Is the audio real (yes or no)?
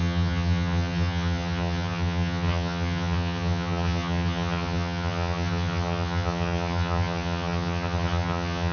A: no